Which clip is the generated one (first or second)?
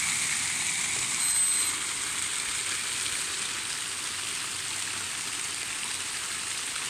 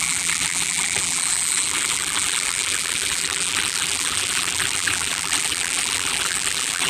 second